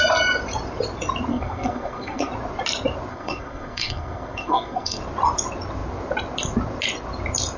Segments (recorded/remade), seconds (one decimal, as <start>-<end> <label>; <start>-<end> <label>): 0.0-1.3 recorded; 1.3-2.3 remade; 2.3-3.1 recorded; 3.1-5.0 remade; 5.0-7.6 recorded